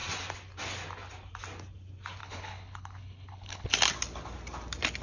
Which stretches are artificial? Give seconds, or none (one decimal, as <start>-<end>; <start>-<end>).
2.2-3.7

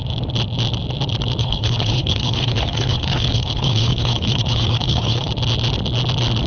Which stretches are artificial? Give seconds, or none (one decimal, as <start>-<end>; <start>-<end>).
1.4-5.3

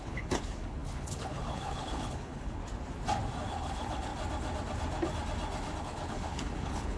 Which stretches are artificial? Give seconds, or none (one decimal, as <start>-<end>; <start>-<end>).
0.0-2.6; 3.5-4.1; 5.8-7.0

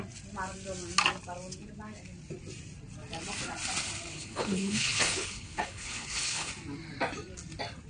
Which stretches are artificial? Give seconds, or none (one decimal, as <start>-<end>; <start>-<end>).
4.1-6.5

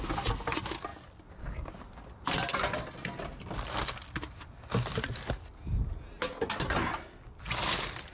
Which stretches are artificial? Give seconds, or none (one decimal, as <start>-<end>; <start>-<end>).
none

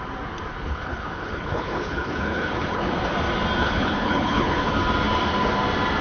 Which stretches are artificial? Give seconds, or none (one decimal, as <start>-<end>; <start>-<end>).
0.5-2.9; 3.6-4.7